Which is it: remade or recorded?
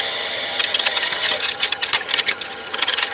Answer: remade